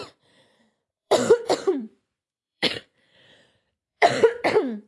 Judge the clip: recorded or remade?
remade